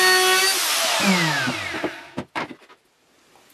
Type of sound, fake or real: real